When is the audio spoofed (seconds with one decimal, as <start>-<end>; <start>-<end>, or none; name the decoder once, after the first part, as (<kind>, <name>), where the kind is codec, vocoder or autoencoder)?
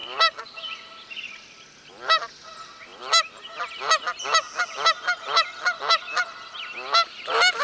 none